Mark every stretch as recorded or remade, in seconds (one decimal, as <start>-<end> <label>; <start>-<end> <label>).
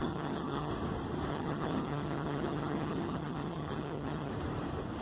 0.0-0.7 remade; 0.7-1.3 recorded; 1.3-4.3 remade; 4.3-5.0 recorded